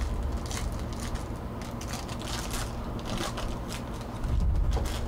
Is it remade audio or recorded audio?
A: recorded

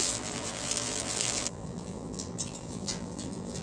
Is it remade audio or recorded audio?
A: remade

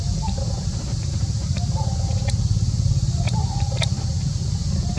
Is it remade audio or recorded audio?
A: recorded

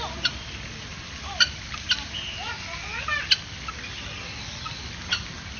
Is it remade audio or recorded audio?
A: recorded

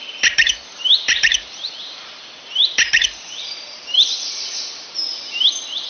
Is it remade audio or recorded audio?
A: remade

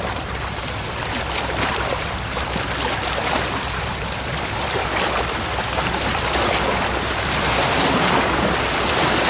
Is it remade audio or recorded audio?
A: remade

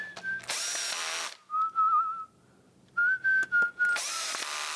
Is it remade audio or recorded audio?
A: recorded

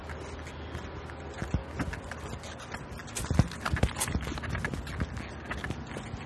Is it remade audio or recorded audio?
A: recorded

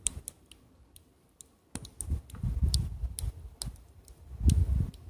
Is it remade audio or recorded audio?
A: remade